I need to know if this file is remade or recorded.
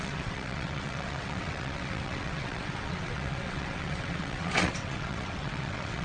remade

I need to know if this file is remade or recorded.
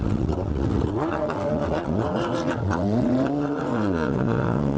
remade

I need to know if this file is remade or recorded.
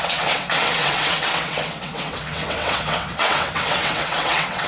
remade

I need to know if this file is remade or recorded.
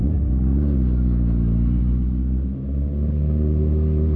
recorded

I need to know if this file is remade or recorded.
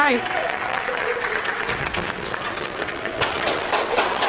remade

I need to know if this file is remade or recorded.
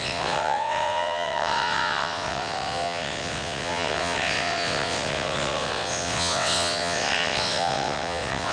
remade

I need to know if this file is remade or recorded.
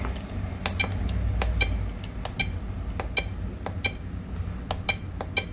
recorded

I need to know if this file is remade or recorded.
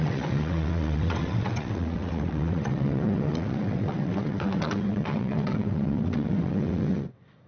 remade